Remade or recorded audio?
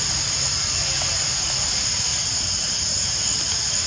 recorded